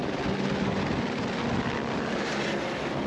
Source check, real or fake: real